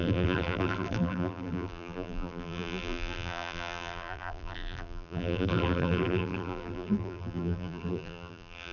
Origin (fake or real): fake